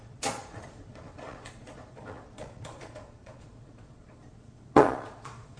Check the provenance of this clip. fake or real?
fake